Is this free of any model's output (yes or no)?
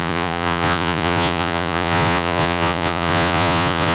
no